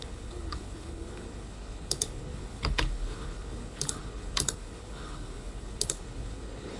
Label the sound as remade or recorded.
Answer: remade